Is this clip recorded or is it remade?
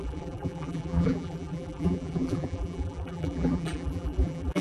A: remade